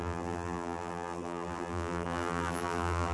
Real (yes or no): no